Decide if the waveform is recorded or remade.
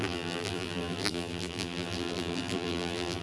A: remade